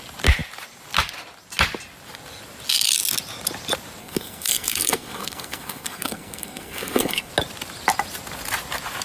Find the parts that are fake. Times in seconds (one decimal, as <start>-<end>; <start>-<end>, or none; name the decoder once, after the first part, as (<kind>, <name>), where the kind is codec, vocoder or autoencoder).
4.0-7.3 (codec, SNAC)